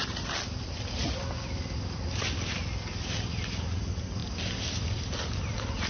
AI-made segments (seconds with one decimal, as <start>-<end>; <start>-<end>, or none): none